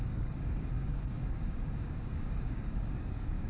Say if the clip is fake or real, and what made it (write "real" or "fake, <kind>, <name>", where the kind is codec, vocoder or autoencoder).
fake, codec, DAC